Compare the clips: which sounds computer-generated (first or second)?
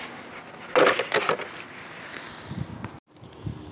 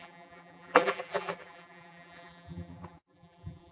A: second